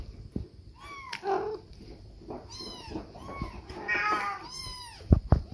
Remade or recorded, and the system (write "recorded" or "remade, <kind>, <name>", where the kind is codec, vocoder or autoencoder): recorded